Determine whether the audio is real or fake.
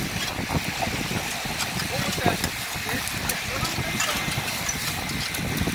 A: real